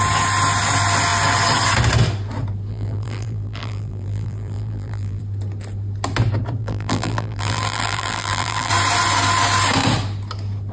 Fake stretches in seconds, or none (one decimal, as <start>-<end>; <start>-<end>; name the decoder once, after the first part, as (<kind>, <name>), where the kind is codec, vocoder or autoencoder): 2.7-5.2 (vocoder, BigVGAN v2); 6.6-8.7